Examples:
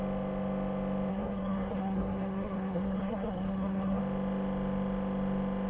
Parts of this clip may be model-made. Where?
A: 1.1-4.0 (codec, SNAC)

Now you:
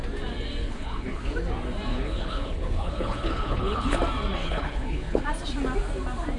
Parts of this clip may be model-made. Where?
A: 0.6-1.2 (codec, HILCodec); 1.9-4.0; 4.4-5.2